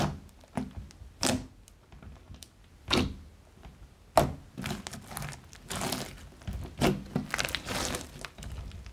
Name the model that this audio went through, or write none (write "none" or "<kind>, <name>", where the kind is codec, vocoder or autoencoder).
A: none